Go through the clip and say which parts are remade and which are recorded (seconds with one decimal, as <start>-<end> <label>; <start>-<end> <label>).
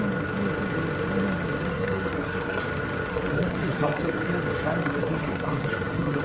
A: 0.0-1.7 recorded; 1.7-2.6 remade; 2.6-3.1 recorded; 3.1-4.3 remade; 4.3-4.8 recorded; 4.8-6.2 remade